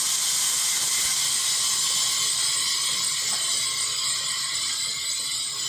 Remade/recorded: recorded